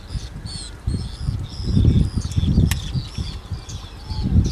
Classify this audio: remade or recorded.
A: recorded